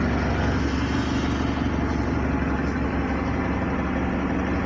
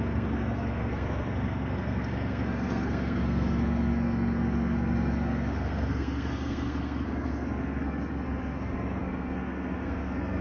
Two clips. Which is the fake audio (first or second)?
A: second